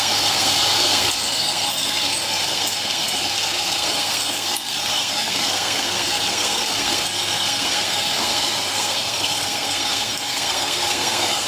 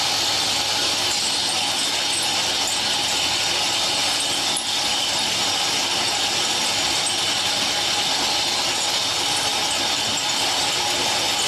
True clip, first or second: second